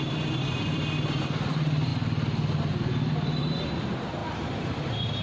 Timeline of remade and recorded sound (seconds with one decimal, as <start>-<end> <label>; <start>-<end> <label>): 0.0-1.9 remade; 1.9-3.4 recorded; 3.4-5.2 remade